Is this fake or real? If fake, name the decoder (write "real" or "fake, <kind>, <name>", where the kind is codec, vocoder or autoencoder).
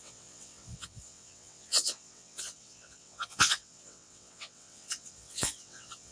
fake, vocoder, WaveNeXt